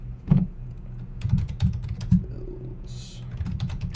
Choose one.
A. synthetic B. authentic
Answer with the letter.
A